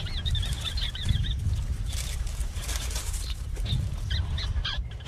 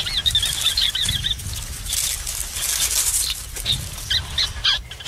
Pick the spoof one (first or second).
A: first